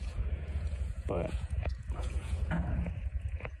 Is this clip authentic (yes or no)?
no